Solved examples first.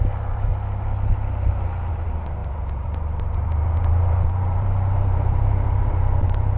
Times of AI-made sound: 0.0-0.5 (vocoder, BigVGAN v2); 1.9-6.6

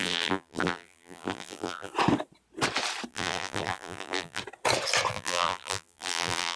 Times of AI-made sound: 0.0-1.9 (vocoder, BigVGAN v2); 3.1-4.4; 5.1-6.6

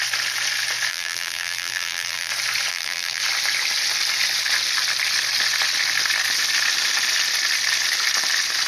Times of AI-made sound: 0.9-2.3 (vocoder, BigVGAN v2); 2.7-3.2

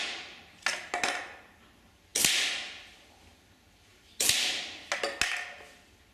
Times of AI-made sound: 3.9-4.6 (vocoder, BigVGAN v2)

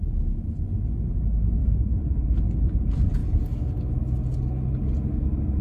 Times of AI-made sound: 1.6-2.4 (vocoder, BigVGAN v2)

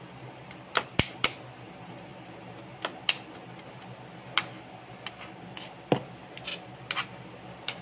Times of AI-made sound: 6.5-7.8 (vocoder, BigVGAN v2)